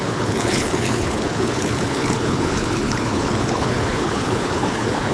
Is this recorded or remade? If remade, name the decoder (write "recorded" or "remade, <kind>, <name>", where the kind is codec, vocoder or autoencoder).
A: remade, codec, HILCodec